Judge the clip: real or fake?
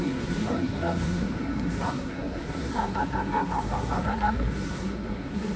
fake